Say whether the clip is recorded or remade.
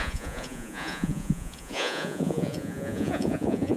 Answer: remade